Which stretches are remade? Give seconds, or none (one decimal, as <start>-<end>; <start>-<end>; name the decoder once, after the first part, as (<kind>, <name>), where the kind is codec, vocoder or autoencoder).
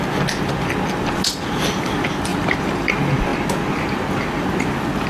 2.3-2.9 (vocoder, BigVGAN v2)